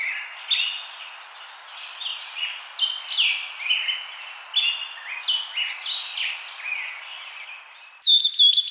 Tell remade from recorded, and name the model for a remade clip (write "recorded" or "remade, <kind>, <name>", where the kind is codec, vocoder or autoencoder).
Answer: recorded